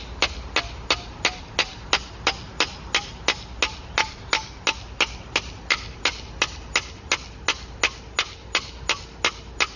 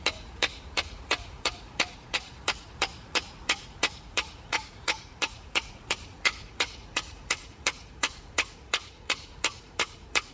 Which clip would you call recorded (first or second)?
first